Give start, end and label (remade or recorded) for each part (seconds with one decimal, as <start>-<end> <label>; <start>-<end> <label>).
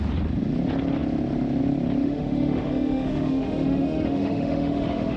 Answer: 0.0-2.0 recorded; 2.0-5.2 remade